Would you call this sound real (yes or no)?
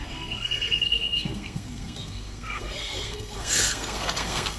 no